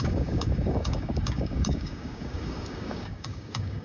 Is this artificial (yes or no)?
yes